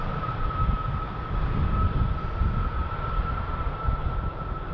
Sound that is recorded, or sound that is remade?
recorded